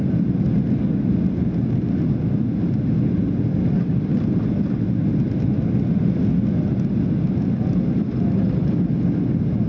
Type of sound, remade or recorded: recorded